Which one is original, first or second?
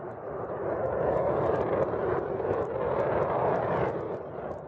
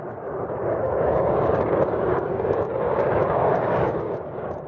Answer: first